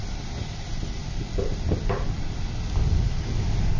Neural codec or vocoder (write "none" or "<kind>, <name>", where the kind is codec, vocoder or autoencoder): none